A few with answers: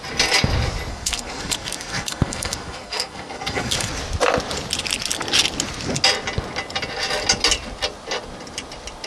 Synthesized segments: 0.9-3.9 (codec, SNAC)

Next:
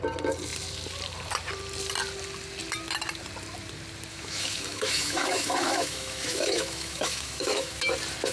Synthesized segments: 4.1-7.9 (autoencoder, DAC-VAE)